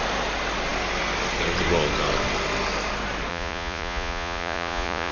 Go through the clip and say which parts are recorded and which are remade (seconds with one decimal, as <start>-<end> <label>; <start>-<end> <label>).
0.0-3.3 recorded; 3.3-5.1 remade